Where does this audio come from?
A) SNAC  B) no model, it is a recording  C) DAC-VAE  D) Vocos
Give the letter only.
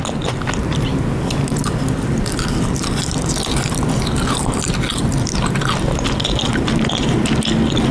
B